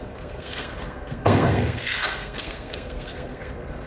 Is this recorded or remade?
remade